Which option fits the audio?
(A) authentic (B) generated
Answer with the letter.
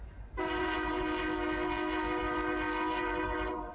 B